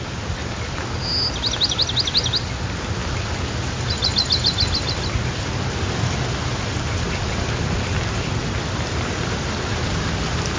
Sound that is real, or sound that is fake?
real